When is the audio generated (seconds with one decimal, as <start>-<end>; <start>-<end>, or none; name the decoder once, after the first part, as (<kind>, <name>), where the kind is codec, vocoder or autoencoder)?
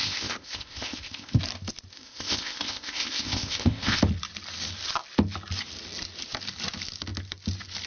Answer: 0.0-1.4 (codec, ZipCodec); 1.9-4.0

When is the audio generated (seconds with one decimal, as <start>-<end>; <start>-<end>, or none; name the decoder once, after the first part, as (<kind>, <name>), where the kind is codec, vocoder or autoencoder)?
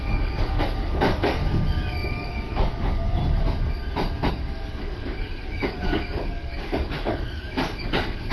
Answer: 0.0-1.4 (codec, DAC); 2.1-3.2; 4.3-8.3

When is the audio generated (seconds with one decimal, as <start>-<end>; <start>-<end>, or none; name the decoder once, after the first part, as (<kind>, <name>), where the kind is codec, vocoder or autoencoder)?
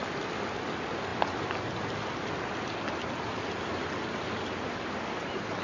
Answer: none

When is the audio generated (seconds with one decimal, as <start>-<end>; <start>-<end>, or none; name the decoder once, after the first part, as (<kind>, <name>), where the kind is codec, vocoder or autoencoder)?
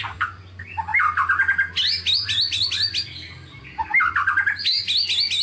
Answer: none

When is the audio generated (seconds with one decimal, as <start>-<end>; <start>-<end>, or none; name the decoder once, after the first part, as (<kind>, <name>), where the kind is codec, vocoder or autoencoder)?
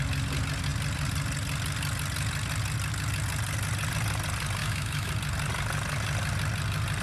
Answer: 4.6-5.1 (autoencoder, DAC-VAE)